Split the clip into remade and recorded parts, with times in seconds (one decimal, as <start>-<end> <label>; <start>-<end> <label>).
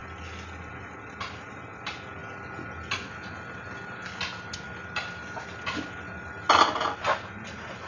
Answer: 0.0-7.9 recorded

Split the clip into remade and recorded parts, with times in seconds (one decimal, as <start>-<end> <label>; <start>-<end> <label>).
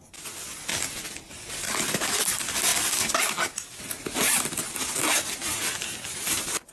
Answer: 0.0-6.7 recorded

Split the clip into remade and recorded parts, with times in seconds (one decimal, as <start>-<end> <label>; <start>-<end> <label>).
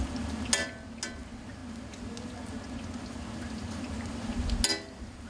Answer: 0.0-5.3 recorded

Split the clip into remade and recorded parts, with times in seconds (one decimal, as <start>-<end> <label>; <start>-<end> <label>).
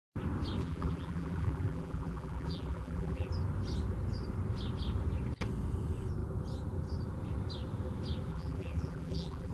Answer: 0.0-0.6 recorded; 0.6-3.3 remade; 3.3-8.3 recorded; 8.3-9.5 remade